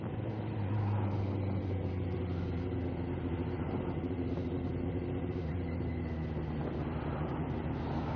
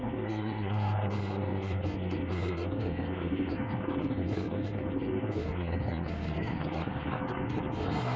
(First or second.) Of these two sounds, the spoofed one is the second